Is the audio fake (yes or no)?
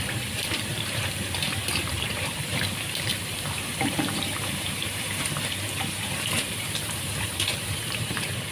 yes